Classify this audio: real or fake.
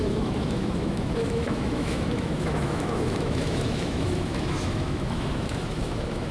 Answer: fake